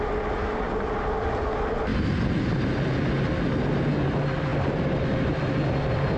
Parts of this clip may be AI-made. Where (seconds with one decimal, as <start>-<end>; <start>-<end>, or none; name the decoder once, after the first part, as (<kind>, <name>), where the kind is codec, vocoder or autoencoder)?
none